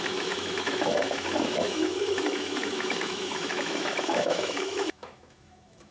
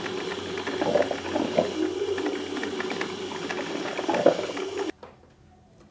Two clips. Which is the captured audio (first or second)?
second